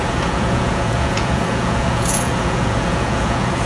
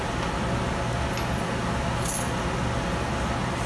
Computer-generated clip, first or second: first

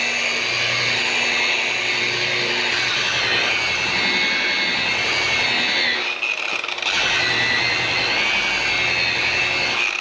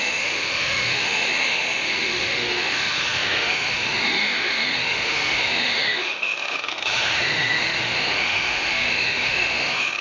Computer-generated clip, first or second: second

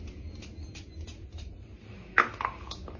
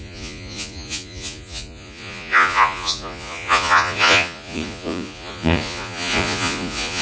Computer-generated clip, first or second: second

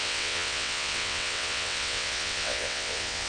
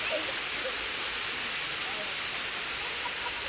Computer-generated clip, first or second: first